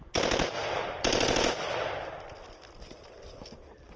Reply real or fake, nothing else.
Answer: real